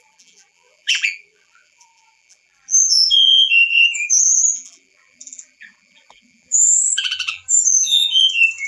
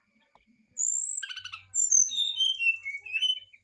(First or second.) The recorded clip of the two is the second